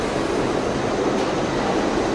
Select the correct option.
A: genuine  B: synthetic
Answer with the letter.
A